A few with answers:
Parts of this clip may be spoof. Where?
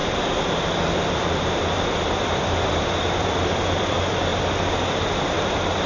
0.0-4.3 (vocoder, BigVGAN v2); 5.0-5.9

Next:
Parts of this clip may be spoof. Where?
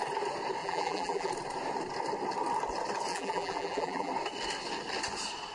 0.6-1.3 (vocoder, BigVGAN v2); 3.1-4.1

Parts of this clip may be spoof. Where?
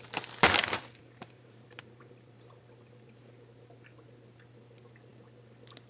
0.6-3.2 (vocoder, BigVGAN v2)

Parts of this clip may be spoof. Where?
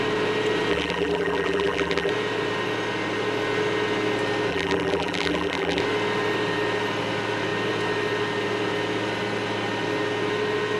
0.7-2.1 (vocoder, BigVGAN v2); 4.5-5.8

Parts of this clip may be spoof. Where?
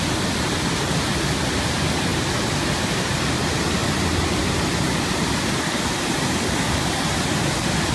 2.1-3.2 (vocoder, BigVGAN v2)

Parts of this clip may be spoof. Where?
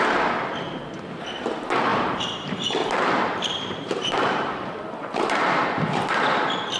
1.9-6.0 (vocoder, BigVGAN v2)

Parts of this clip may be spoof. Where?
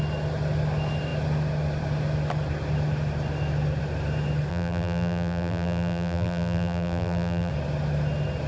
4.5-7.5 (vocoder, BigVGAN v2)